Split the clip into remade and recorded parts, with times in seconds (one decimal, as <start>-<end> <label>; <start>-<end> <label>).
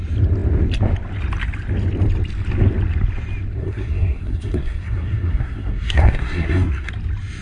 0.0-3.6 recorded; 3.6-6.9 remade; 6.9-7.4 recorded